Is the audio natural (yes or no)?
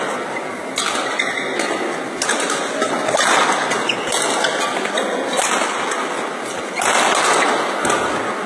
yes